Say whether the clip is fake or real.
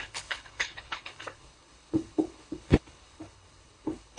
fake